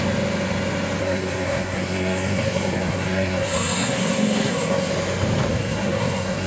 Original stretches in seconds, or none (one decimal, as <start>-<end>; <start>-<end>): 0.0-1.0; 4.9-5.5